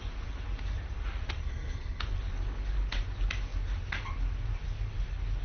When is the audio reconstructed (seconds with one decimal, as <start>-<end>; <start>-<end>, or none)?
1.4-2.0

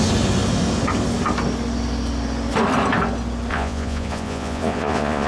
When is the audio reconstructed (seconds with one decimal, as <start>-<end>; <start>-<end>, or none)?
3.5-5.3

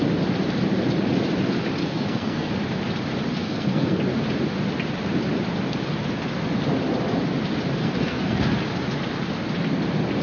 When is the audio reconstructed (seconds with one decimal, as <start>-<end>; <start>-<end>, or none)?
1.8-2.5; 3.4-4.0; 7.8-8.4

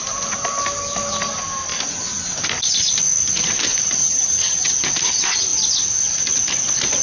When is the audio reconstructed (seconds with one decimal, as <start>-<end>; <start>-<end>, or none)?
4.0-4.7

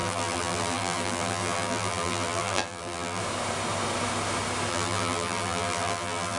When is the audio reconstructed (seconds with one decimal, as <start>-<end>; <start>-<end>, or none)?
0.0-3.2; 4.7-6.4

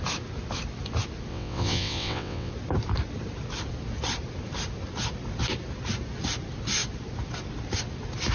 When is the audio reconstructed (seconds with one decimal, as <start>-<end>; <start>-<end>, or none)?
1.3-2.5